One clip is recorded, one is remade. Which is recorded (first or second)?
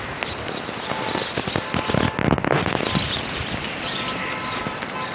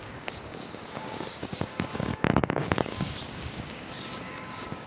first